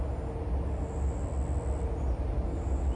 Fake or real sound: real